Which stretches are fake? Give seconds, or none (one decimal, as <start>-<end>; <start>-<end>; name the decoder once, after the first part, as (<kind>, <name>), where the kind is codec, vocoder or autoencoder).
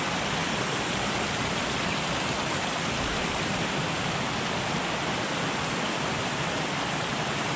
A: none